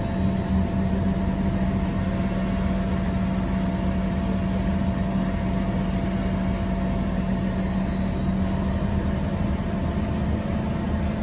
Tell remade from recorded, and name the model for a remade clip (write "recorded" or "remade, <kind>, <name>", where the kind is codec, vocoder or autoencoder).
recorded